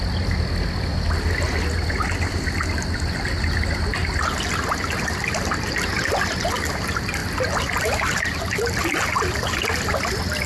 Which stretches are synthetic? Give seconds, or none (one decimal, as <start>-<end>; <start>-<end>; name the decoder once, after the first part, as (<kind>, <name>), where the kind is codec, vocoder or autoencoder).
none